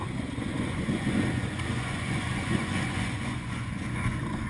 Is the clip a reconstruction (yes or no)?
yes